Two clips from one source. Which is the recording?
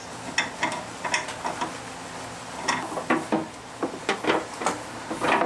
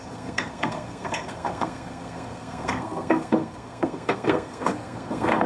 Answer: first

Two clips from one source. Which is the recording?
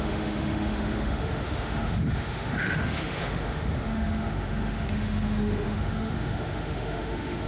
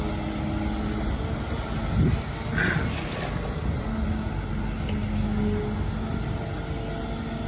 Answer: second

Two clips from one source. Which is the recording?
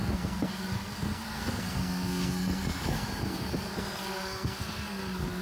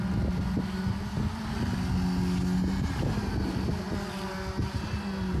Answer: second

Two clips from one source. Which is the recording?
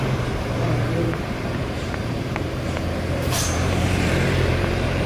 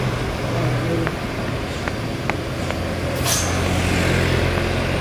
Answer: second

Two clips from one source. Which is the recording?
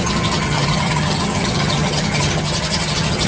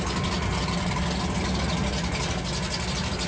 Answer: second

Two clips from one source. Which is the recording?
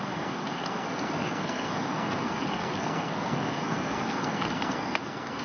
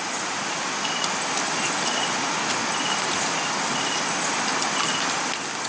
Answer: second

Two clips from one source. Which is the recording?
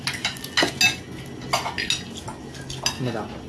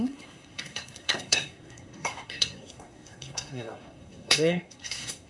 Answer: first